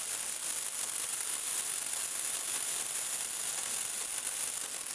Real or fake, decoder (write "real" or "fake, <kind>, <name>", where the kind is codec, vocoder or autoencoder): real